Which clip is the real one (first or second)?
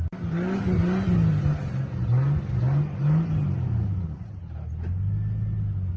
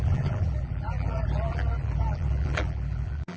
first